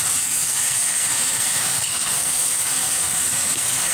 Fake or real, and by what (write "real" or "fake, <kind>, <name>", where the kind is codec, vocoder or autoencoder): fake, codec, SNAC